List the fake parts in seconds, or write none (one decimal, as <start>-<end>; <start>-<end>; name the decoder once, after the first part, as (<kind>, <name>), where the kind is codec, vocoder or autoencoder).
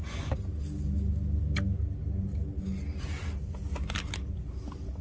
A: none